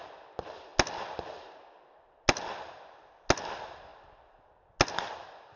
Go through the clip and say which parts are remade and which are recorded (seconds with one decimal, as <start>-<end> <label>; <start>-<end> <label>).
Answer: 0.0-5.6 recorded